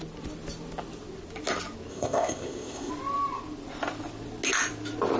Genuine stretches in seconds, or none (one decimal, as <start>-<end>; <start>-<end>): 0.0-1.9; 2.9-5.2